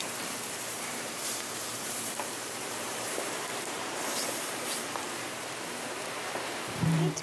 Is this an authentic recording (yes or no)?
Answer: no